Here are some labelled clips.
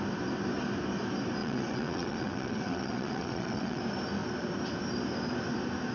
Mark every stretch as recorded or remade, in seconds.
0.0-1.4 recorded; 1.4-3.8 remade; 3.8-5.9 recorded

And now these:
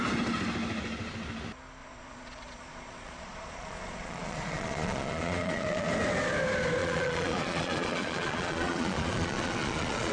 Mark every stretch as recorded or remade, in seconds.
0.0-1.8 recorded; 1.8-5.9 remade; 5.9-6.8 recorded; 6.8-10.1 remade

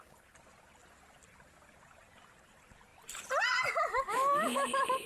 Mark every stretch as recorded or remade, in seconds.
0.0-5.1 recorded

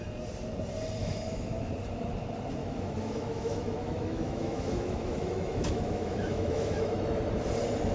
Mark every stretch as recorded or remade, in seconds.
0.0-1.0 recorded; 1.0-1.7 remade; 1.7-2.6 recorded; 2.6-7.3 remade; 7.3-7.9 recorded